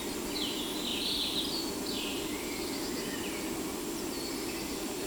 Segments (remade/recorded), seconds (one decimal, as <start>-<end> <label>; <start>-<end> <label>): 0.0-2.1 recorded; 2.1-5.1 remade